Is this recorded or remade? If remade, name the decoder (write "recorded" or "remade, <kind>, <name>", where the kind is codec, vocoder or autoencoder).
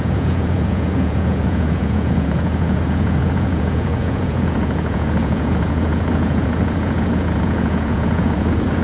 remade, vocoder, Vocos